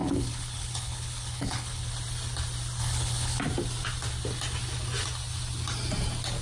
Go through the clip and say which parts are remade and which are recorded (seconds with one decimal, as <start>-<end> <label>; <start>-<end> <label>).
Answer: 0.0-1.9 remade; 1.9-2.8 recorded; 2.8-3.4 remade; 3.4-6.4 recorded